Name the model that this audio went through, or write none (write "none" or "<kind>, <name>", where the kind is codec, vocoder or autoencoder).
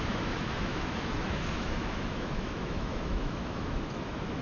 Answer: autoencoder, DAC-VAE